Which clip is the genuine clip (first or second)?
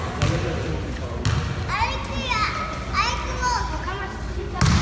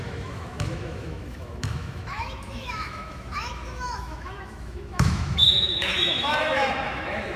first